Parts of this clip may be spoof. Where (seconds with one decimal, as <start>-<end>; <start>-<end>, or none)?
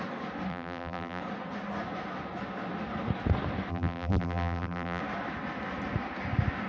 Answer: 0.5-1.2; 3.7-5.0